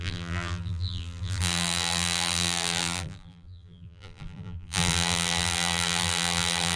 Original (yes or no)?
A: no